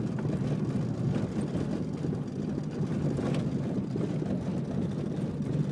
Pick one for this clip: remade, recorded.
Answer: recorded